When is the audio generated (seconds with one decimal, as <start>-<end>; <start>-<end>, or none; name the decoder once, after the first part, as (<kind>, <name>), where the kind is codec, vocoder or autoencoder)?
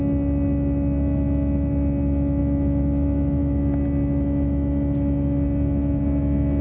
none